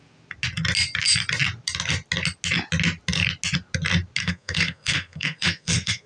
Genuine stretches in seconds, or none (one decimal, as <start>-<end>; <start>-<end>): 0.0-4.2